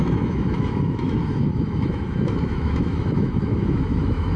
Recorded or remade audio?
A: remade